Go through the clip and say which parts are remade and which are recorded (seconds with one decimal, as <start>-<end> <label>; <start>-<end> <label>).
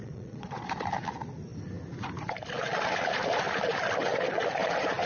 0.0-0.7 remade; 0.7-5.1 recorded